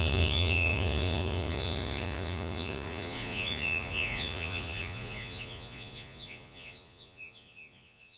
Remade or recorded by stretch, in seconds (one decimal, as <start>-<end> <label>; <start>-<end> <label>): 0.0-8.2 remade